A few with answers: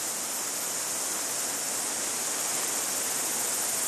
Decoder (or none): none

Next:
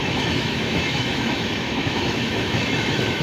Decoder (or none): autoencoder, DAC-VAE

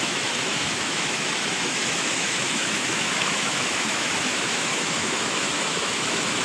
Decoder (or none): autoencoder, DAC-VAE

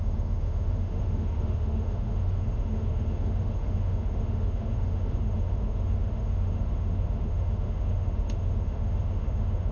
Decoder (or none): autoencoder, DAC-VAE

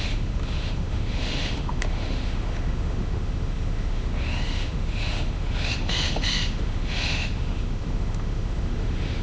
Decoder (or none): autoencoder, DAC-VAE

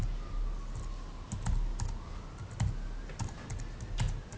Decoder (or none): none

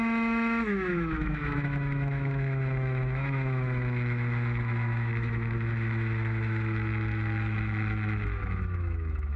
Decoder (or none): autoencoder, DAC-VAE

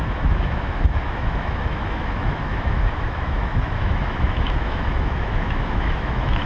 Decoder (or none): autoencoder, DAC-VAE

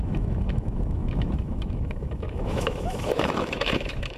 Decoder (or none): autoencoder, DAC-VAE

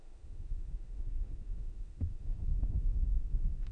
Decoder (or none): autoencoder, DAC-VAE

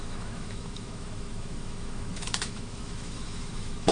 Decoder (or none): autoencoder, DAC-VAE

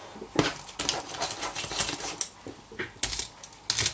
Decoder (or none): none